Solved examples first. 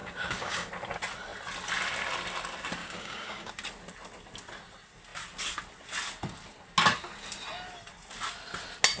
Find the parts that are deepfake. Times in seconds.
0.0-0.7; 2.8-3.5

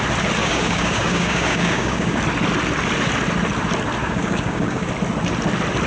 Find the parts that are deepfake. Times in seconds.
0.4-2.2; 4.0-4.9

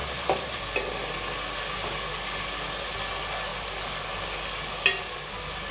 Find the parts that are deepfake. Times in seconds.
none